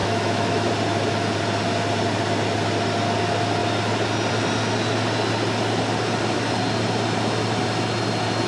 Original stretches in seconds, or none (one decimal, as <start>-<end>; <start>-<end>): 0.7-8.5